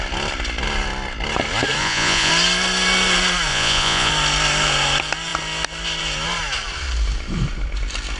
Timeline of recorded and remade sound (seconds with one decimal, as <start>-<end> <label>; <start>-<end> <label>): 0.0-1.8 recorded; 1.8-2.3 remade; 2.3-3.5 recorded; 3.5-4.1 remade; 4.1-8.2 recorded